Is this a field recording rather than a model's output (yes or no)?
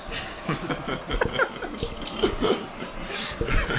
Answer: yes